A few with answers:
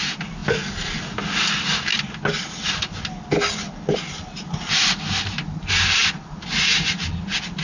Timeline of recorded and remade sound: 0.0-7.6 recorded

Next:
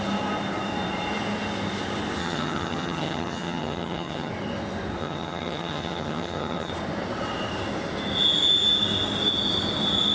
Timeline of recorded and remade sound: 0.0-2.2 recorded; 2.2-4.3 remade; 4.3-5.0 recorded; 5.0-6.7 remade; 6.7-10.1 recorded